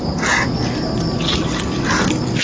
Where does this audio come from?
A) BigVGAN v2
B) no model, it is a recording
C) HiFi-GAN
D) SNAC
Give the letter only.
B